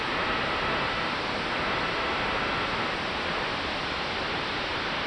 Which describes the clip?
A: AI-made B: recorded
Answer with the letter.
B